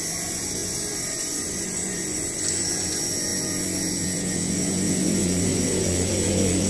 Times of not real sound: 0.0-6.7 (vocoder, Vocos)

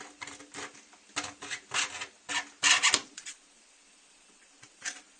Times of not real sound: 3.0-5.2 (vocoder, Vocos)

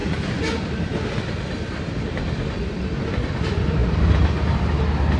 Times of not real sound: none

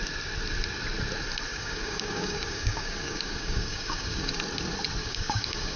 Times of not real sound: 1.5-4.3 (codec, DAC); 5.0-5.8

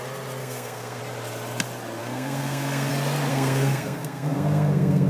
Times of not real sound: 0.4-1.0 (codec, SNAC); 2.0-2.9; 3.3-5.1

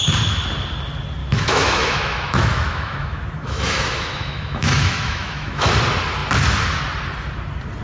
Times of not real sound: 1.2-5.7 (autoencoder, DAC-VAE)

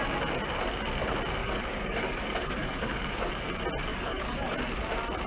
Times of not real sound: 1.4-3.3 (codec, DAC); 3.9-4.5